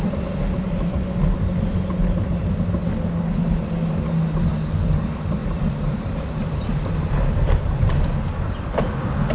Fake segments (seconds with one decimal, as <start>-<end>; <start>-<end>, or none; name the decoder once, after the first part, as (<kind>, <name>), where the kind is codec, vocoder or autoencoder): 1.7-2.4 (vocoder, BigVGAN v2); 5.4-8.8